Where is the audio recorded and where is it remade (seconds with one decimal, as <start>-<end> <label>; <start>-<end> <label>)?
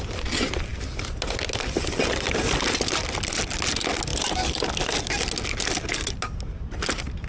0.0-4.1 recorded; 4.1-4.7 remade; 4.7-7.3 recorded